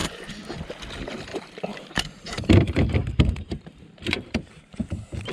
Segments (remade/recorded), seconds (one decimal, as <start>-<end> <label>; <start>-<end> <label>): 0.0-0.5 remade; 0.5-1.3 recorded; 1.3-4.5 remade; 4.5-5.3 recorded